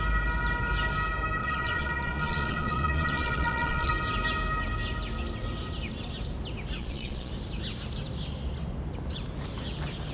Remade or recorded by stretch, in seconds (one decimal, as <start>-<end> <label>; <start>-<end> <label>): 0.0-1.4 recorded; 1.4-3.9 remade; 3.9-6.8 recorded; 6.8-7.3 remade; 7.3-10.1 recorded

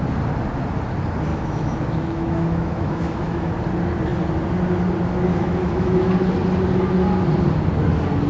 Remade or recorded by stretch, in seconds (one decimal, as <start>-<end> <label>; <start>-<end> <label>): 0.0-1.3 recorded; 1.3-3.5 remade; 3.5-5.3 recorded; 5.3-6.1 remade; 6.1-8.3 recorded

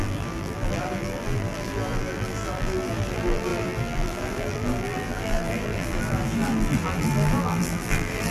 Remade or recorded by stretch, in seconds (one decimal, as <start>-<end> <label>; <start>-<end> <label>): 0.0-8.3 remade